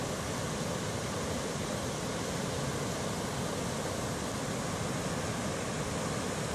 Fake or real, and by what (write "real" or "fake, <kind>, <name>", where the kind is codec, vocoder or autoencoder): real